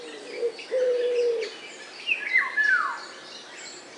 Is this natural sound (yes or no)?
yes